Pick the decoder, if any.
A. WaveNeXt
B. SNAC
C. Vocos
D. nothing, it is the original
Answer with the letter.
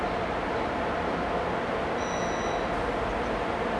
D